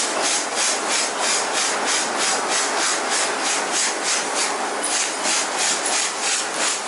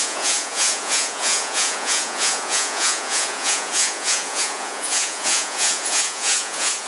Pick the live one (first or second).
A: first